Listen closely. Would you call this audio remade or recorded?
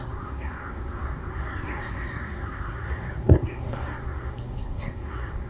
remade